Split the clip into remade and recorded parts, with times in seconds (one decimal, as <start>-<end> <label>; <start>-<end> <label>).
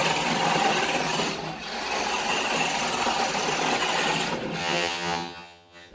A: 0.0-4.6 recorded; 4.6-5.9 remade